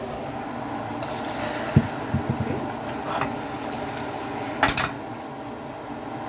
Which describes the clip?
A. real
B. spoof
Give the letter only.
A